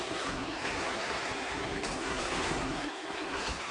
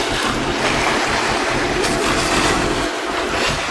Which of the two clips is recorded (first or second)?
second